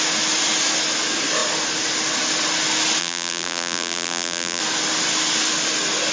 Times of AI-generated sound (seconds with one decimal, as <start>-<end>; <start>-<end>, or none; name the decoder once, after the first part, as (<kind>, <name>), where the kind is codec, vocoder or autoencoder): 3.0-4.6 (vocoder, BigVGAN v2)